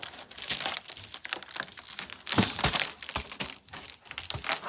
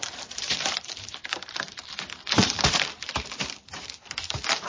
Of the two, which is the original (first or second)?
first